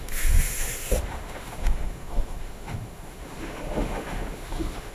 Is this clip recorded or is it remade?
remade